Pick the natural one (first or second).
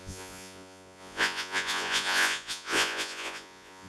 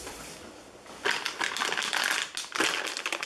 second